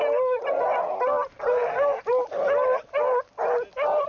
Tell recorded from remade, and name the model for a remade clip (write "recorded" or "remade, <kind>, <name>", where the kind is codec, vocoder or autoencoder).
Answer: recorded